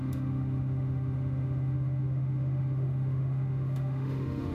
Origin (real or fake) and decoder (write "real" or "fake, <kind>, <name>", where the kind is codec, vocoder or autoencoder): fake, autoencoder, DAC-VAE